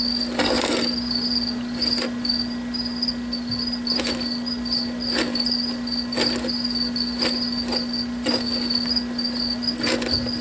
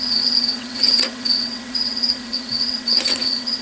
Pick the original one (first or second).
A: first